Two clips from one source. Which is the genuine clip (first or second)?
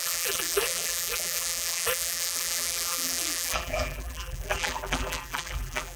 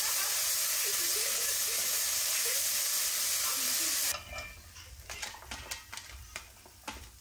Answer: second